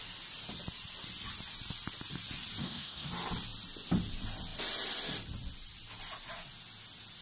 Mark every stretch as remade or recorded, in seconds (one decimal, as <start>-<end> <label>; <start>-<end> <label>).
0.0-2.6 recorded; 2.6-3.1 remade; 3.1-7.2 recorded